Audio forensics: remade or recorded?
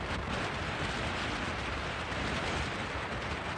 recorded